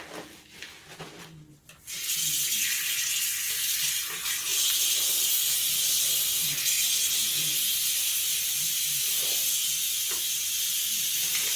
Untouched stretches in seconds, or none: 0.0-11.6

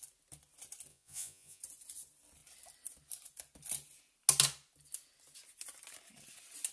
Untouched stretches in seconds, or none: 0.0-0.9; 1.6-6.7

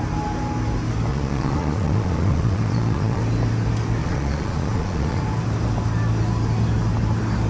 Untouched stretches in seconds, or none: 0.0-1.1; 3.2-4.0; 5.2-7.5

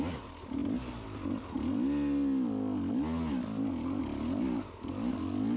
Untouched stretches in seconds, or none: 0.0-5.6

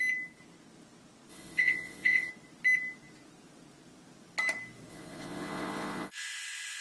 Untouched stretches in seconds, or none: 0.0-1.3; 2.3-4.9

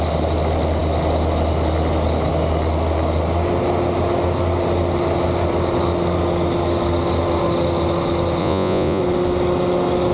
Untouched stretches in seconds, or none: 0.0-8.4; 9.0-10.1

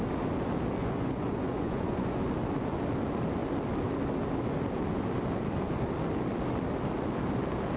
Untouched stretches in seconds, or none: 0.0-0.8; 2.2-7.8

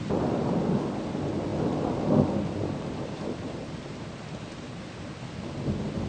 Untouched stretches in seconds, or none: 0.0-6.1